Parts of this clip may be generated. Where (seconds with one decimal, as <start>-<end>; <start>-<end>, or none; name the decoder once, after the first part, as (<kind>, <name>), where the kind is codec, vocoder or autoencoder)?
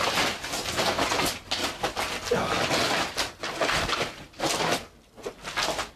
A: none